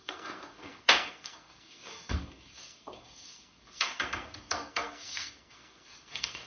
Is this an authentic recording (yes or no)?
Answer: no